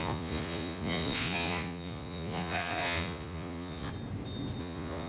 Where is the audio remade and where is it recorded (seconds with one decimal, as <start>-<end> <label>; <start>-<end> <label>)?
0.0-3.9 remade; 3.9-4.6 recorded; 4.6-5.1 remade